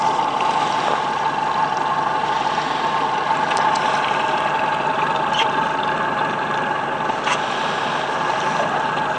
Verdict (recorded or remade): recorded